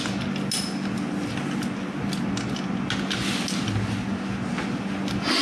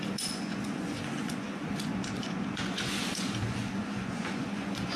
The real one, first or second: first